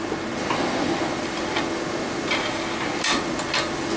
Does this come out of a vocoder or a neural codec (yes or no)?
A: no